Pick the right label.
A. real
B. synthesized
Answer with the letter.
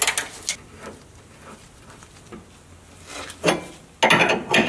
A